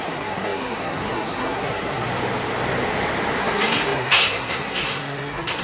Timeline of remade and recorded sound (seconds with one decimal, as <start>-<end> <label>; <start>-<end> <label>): 0.0-2.1 remade; 2.1-3.4 recorded; 3.4-5.6 remade